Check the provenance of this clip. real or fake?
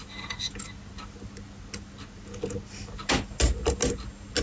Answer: real